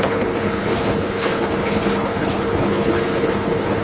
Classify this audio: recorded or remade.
remade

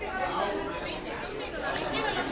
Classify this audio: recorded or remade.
recorded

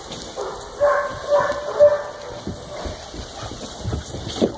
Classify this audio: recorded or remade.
recorded